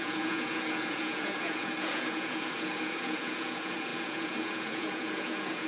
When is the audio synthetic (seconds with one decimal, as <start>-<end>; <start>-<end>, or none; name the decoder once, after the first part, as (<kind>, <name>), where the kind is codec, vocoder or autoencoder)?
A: 0.0-5.7 (vocoder, Vocos)